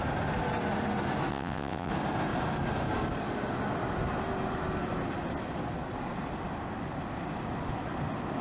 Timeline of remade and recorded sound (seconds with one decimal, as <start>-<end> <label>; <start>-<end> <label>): 0.0-1.3 recorded; 1.3-1.9 remade; 1.9-8.4 recorded